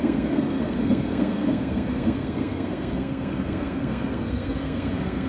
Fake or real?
fake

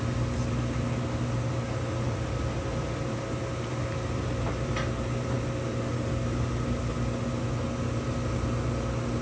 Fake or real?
real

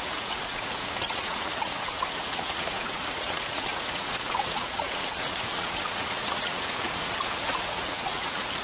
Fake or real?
fake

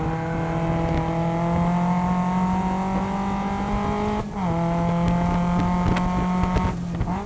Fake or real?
real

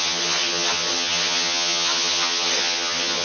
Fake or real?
fake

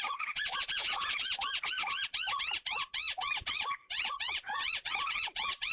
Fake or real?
fake